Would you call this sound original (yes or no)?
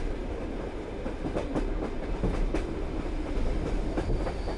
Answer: no